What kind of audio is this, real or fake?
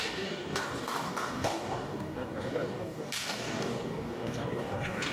fake